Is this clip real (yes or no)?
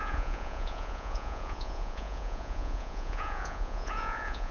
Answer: no